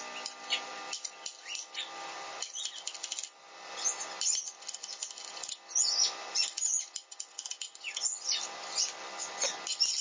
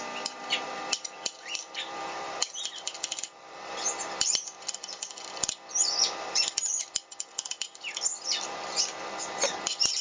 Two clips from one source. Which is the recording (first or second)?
first